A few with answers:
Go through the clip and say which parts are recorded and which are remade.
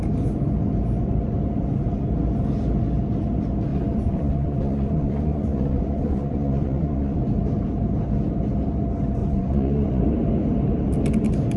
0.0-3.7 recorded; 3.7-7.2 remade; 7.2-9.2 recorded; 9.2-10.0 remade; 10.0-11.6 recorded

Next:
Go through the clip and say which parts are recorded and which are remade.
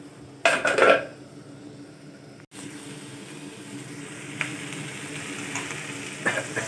0.0-6.7 recorded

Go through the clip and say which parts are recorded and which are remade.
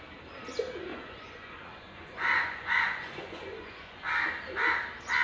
0.0-0.9 recorded; 0.9-4.0 remade; 4.0-5.2 recorded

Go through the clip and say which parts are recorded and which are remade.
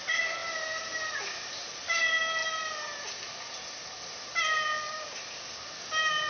0.0-6.3 recorded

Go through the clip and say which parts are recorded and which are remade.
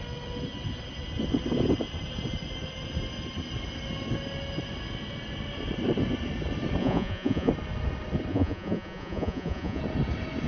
0.0-6.8 recorded; 6.8-7.5 remade; 7.5-8.3 recorded; 8.3-9.8 remade; 9.8-10.5 recorded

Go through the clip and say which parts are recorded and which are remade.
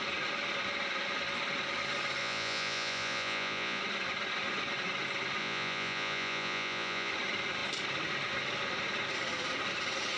0.0-2.2 recorded; 2.2-3.8 remade; 3.8-5.4 recorded; 5.4-7.1 remade; 7.1-10.2 recorded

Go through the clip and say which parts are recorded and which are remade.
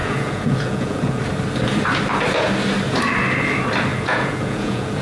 0.0-1.2 remade; 1.2-3.9 recorded; 3.9-5.0 remade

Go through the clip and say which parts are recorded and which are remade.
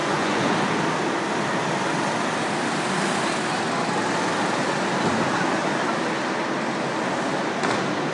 0.0-0.5 remade; 0.5-8.1 recorded